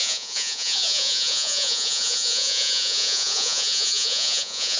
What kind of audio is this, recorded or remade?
remade